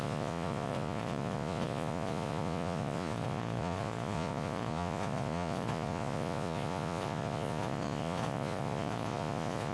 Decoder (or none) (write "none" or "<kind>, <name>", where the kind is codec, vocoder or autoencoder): vocoder, Vocos